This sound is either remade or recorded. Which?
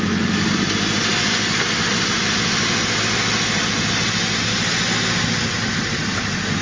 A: recorded